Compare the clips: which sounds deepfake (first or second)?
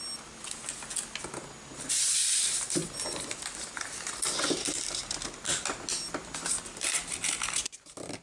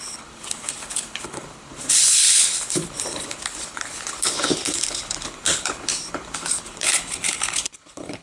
second